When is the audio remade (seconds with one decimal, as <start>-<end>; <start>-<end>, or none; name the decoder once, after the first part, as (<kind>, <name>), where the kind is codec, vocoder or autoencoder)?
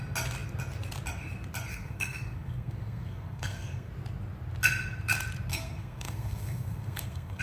1.7-3.9 (codec, SNAC); 5.5-7.4